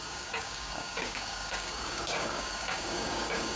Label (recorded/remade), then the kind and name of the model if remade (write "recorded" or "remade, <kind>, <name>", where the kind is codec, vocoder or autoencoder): remade, codec, DAC